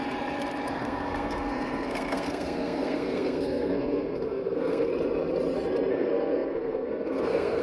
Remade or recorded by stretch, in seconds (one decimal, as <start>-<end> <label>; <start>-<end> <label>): 0.0-0.7 recorded; 0.7-4.9 remade; 4.9-5.9 recorded; 5.9-7.6 remade